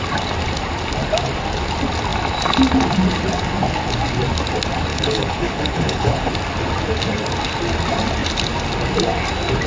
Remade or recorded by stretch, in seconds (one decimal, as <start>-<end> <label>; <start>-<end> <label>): 0.0-4.9 recorded; 4.9-6.3 remade; 6.3-9.7 recorded

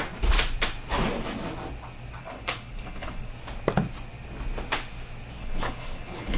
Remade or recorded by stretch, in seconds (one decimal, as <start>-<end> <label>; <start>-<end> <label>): 0.0-2.2 recorded; 2.2-3.3 remade; 3.3-5.4 recorded; 5.4-6.4 remade

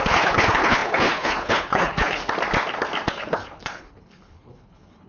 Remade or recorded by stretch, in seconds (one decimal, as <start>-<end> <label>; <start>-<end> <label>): 0.0-2.2 remade; 2.2-3.1 recorded; 3.1-5.1 remade

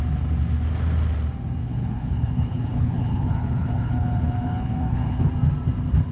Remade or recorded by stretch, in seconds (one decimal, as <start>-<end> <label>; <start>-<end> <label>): 0.0-1.6 recorded; 1.6-5.3 remade; 5.3-6.1 recorded

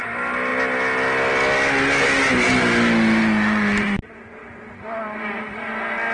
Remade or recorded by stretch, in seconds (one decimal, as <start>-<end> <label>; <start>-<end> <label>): 0.0-6.1 recorded

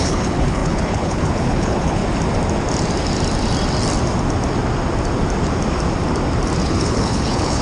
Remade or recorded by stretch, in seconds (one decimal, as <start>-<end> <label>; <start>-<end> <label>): 0.0-2.0 remade; 2.0-6.6 recorded; 6.6-7.6 remade